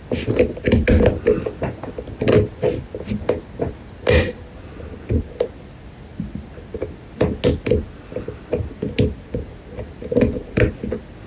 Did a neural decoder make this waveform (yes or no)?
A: no